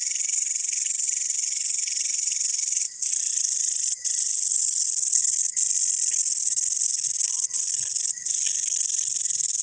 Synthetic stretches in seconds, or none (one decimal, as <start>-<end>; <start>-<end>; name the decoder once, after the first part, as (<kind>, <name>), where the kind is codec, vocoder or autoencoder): 0.0-3.6 (codec, HILCodec); 4.2-5.6; 6.1-9.6